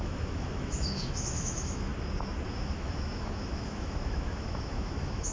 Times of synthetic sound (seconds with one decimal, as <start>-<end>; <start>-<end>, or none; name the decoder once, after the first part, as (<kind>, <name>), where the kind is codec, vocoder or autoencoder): 0.0-1.9 (autoencoder, DAC-VAE); 2.5-5.3